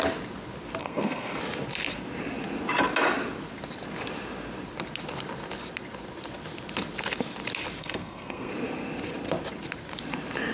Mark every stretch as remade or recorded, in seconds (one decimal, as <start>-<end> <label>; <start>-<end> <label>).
0.0-0.8 recorded; 0.8-1.4 remade; 1.4-7.8 recorded; 7.8-8.5 remade; 8.5-10.5 recorded